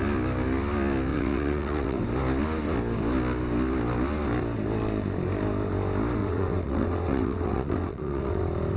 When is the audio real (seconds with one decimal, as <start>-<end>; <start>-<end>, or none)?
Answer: 0.0-1.1; 2.0-6.2; 8.4-8.8